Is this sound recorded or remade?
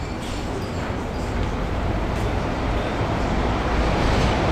remade